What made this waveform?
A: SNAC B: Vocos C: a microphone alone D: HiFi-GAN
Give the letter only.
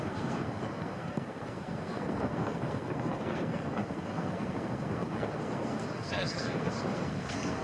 A